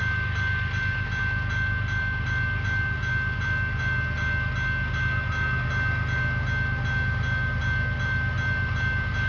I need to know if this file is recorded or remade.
recorded